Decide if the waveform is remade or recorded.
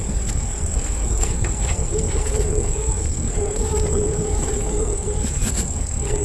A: remade